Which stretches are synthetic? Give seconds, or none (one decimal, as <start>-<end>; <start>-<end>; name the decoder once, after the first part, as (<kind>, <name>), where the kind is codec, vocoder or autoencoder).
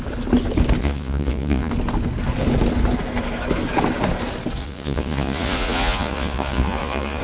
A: 0.8-1.7 (vocoder, Vocos); 4.6-7.2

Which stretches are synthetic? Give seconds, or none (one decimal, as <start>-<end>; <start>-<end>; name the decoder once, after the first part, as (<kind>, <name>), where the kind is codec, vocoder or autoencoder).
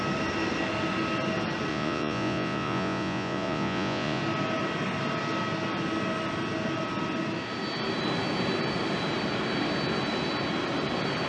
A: 1.7-4.2 (vocoder, Vocos)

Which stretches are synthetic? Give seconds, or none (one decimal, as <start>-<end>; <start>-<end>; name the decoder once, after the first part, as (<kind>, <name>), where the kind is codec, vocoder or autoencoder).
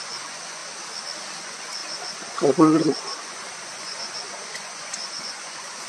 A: 0.0-0.6 (vocoder, Vocos); 1.4-5.9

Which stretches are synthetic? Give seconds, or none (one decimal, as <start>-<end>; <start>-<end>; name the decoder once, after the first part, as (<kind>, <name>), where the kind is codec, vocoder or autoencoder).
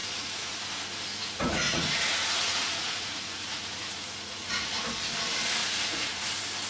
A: 0.0-0.6 (vocoder, Vocos); 1.2-4.7; 5.6-6.3